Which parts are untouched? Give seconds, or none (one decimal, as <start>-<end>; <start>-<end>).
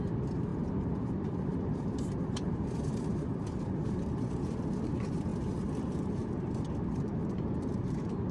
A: 0.5-1.0; 5.3-6.0